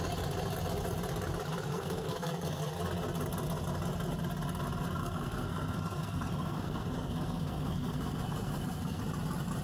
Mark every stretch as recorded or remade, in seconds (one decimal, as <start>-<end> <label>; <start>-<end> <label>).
0.0-1.7 recorded; 1.7-2.6 remade; 2.6-5.0 recorded; 5.0-9.0 remade; 9.0-9.6 recorded